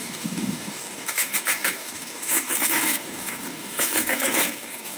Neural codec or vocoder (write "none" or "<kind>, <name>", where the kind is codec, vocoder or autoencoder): codec, DAC